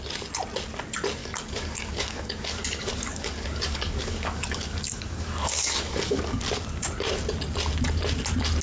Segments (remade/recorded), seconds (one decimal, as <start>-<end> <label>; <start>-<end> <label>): 0.0-1.2 recorded; 1.2-6.4 remade; 6.4-8.6 recorded

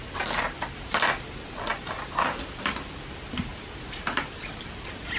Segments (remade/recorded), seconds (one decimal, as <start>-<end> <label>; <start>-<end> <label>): 0.0-3.5 recorded; 3.5-4.7 remade; 4.7-5.2 recorded

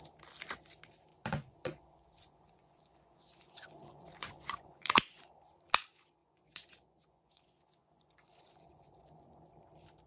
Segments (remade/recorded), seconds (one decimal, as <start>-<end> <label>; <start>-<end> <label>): 0.0-1.1 recorded; 1.1-5.3 remade; 5.3-6.2 recorded; 6.2-9.5 remade; 9.5-10.1 recorded

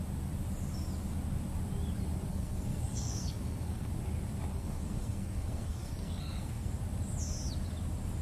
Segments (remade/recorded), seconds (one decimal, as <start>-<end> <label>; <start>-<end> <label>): 0.0-2.3 recorded; 2.3-3.9 remade; 3.9-4.5 recorded; 4.5-6.7 remade; 6.7-8.2 recorded

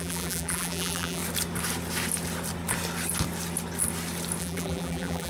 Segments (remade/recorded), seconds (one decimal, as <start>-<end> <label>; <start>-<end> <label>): 0.0-1.2 remade; 1.2-4.4 recorded; 4.4-5.3 remade

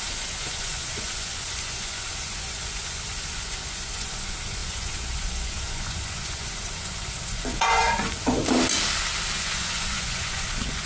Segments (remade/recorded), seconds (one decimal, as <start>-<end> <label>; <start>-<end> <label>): 0.0-8.4 remade; 8.4-9.4 recorded; 9.4-10.9 remade

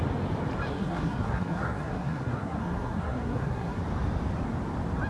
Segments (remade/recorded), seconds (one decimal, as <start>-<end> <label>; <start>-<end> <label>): 0.0-0.7 recorded; 0.7-3.8 remade; 3.8-5.1 recorded

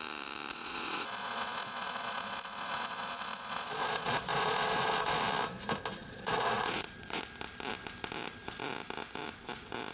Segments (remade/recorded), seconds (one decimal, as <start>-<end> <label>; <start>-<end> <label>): 0.0-0.5 recorded; 0.5-5.2 remade; 5.2-6.0 recorded; 6.0-7.2 remade; 7.2-9.9 recorded